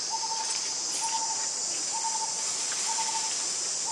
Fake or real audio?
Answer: real